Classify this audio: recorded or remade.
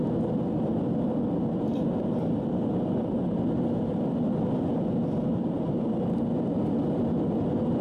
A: recorded